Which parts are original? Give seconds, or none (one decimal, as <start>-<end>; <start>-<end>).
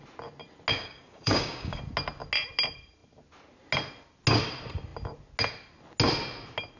0.0-0.7; 1.8-6.8